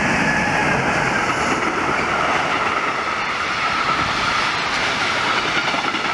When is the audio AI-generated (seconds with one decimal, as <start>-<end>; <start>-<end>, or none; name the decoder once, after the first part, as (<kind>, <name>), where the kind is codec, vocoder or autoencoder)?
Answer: none